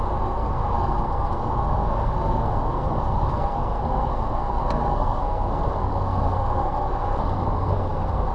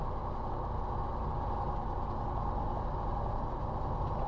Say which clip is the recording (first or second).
second